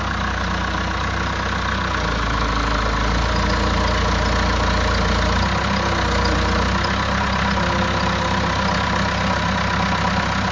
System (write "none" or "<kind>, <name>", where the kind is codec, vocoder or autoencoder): none